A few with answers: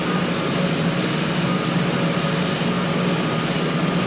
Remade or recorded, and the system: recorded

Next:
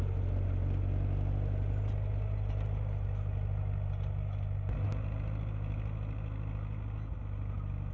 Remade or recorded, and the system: recorded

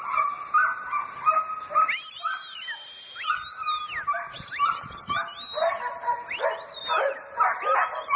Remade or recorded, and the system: recorded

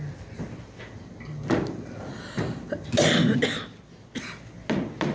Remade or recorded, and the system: recorded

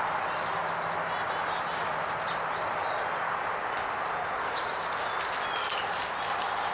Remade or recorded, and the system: recorded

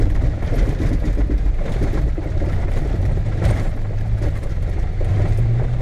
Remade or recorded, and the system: remade, vocoder, BigVGAN v2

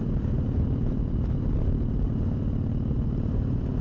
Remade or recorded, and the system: remade, vocoder, BigVGAN v2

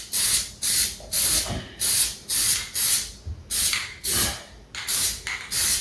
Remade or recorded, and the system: recorded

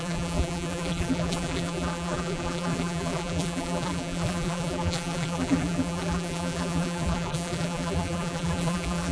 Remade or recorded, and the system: remade, vocoder, BigVGAN v2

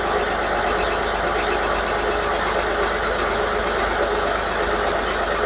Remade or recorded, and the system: recorded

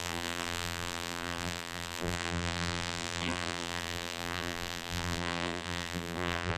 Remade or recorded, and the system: remade, vocoder, BigVGAN v2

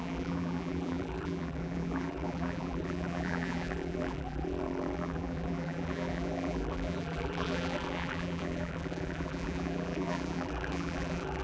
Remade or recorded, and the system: remade, vocoder, BigVGAN v2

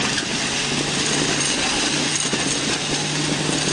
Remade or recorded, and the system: recorded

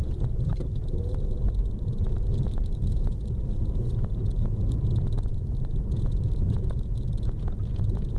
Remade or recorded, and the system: remade, vocoder, BigVGAN v2